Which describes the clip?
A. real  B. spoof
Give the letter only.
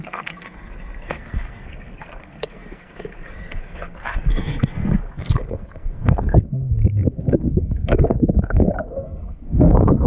B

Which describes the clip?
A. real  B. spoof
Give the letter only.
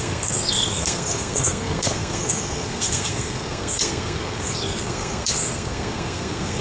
B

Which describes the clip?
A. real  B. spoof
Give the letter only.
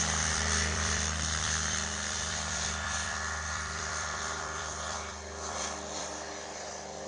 B